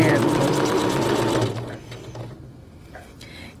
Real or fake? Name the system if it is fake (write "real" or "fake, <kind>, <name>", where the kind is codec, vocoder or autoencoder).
real